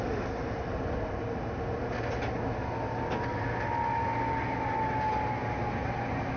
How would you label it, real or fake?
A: real